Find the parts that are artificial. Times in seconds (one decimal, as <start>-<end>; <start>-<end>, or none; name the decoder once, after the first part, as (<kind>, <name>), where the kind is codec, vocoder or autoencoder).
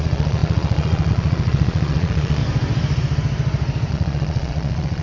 0.0-2.4 (vocoder, Vocos); 3.9-5.0